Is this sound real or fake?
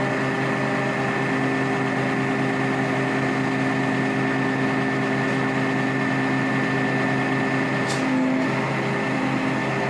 real